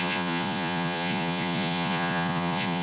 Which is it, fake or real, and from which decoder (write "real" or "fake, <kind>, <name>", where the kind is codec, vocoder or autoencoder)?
fake, vocoder, Vocos